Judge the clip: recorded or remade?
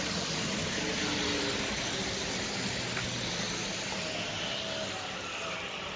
recorded